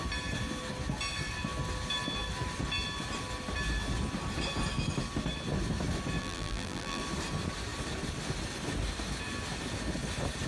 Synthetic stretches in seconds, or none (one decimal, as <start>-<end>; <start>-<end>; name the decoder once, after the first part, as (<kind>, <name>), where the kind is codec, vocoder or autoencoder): 6.2-7.0 (vocoder, BigVGAN v2)